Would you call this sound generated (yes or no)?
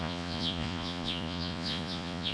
yes